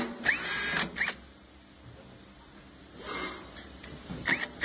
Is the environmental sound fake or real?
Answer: real